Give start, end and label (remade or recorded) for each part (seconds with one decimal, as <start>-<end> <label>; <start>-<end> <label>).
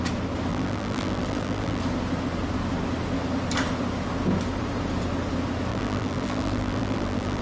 0.0-0.5 recorded; 0.5-1.8 remade; 1.8-5.7 recorded; 5.7-7.4 remade